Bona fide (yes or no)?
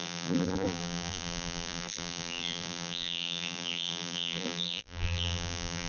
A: no